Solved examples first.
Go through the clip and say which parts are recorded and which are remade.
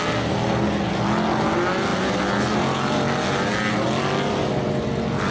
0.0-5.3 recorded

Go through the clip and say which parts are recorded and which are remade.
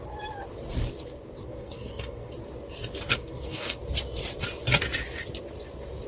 0.0-1.4 recorded; 1.4-2.3 remade; 2.3-3.1 recorded; 3.1-3.8 remade; 3.8-6.1 recorded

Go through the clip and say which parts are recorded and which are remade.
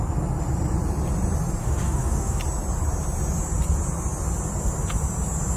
0.0-1.6 recorded; 1.6-2.4 remade; 2.4-5.6 recorded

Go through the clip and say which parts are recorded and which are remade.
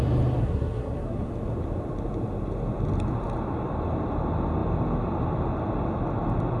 0.0-0.4 recorded; 0.4-1.3 remade; 1.3-6.6 recorded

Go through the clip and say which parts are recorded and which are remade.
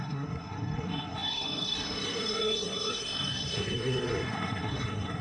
0.0-5.2 remade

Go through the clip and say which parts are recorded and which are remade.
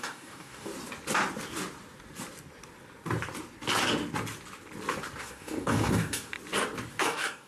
0.0-0.7 remade; 0.7-5.2 recorded; 5.2-6.3 remade; 6.3-6.9 recorded; 6.9-7.5 remade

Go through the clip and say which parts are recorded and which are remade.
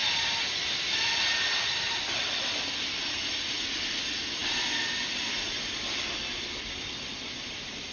0.0-7.9 recorded